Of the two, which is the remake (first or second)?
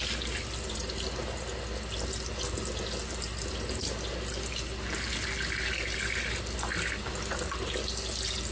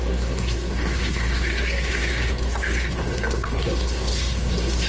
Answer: second